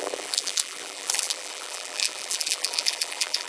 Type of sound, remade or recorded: remade